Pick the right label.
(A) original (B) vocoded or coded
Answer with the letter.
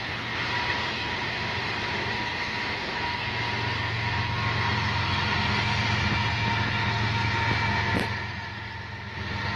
A